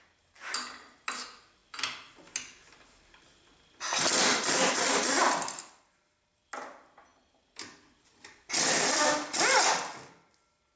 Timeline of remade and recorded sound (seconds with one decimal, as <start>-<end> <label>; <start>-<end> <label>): 0.0-10.8 recorded